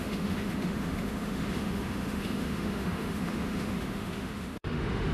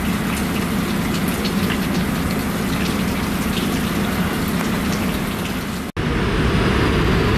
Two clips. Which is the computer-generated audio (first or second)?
first